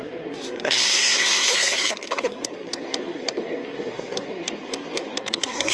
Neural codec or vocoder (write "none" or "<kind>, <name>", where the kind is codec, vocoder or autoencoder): codec, SNAC